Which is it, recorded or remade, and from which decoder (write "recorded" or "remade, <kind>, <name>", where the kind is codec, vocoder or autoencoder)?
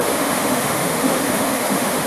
remade, autoencoder, DAC-VAE